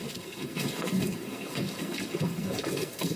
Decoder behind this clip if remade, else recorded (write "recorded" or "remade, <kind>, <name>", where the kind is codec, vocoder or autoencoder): remade, codec, SNAC